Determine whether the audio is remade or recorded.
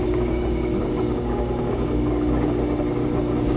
remade